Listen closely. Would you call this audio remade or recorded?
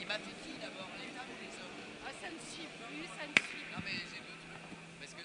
recorded